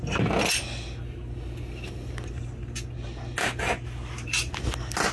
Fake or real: real